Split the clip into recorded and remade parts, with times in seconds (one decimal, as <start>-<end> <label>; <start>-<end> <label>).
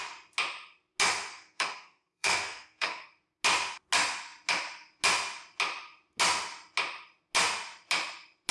0.0-1.3 recorded; 1.3-3.1 remade; 3.1-8.5 recorded